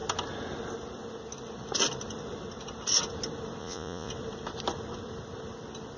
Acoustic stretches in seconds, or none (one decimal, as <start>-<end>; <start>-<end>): 0.0-3.6; 4.1-6.0